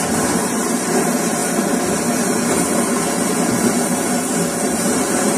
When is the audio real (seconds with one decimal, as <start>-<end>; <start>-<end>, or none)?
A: 1.4-4.6